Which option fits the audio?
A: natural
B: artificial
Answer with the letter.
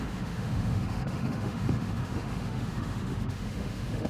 B